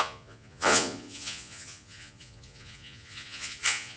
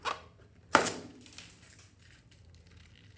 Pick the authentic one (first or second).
second